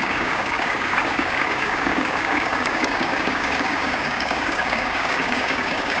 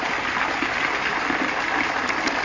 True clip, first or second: second